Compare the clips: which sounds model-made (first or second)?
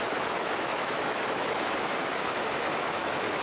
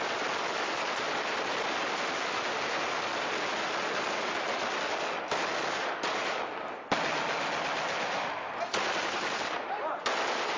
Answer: first